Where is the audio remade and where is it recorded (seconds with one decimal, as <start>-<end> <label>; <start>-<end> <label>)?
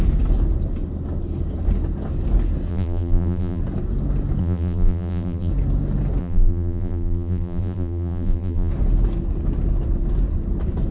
0.0-2.7 recorded; 2.7-3.6 remade; 3.6-4.4 recorded; 4.4-5.5 remade; 5.5-6.2 recorded; 6.2-8.7 remade; 8.7-10.9 recorded